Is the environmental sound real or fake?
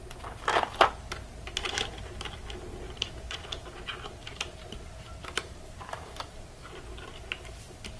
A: real